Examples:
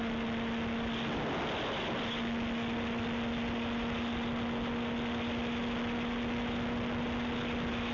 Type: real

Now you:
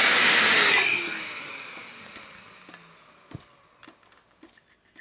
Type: real